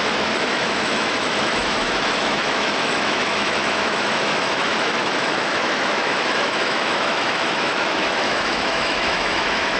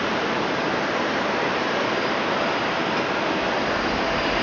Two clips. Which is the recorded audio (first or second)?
second